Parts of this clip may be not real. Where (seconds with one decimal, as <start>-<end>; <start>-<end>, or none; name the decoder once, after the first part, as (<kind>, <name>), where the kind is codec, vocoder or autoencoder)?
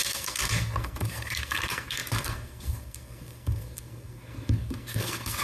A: 0.0-5.4 (codec, SNAC)